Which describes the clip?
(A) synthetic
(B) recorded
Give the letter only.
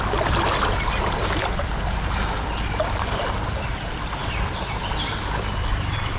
B